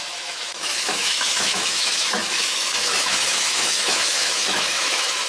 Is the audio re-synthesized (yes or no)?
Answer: yes